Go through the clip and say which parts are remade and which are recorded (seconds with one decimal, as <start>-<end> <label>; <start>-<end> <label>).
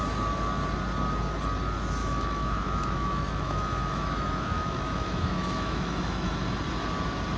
0.0-2.0 recorded; 2.0-6.3 remade; 6.3-7.4 recorded